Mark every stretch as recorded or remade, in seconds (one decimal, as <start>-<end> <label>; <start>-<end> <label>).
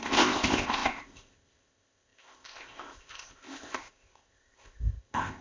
0.0-5.4 remade